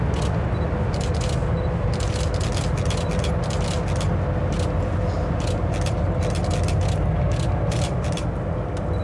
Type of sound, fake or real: real